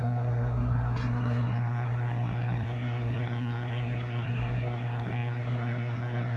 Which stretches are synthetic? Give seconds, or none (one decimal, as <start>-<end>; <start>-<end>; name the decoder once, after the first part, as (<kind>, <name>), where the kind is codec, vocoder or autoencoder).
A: 0.0-6.4 (codec, SNAC)